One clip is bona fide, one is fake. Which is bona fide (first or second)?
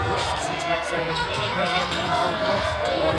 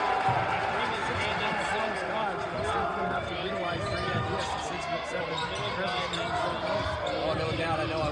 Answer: second